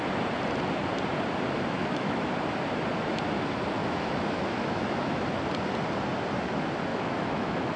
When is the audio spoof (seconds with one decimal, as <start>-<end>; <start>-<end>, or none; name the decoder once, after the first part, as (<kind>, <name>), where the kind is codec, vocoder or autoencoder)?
1.8-2.3 (autoencoder, DAC-VAE); 3.8-5.2; 6.9-7.8